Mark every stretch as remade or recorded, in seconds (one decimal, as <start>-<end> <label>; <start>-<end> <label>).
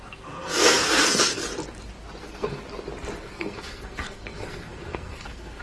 0.0-1.4 remade; 1.4-2.2 recorded; 2.2-2.6 remade; 2.6-3.2 recorded; 3.2-5.6 remade